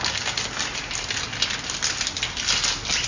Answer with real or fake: real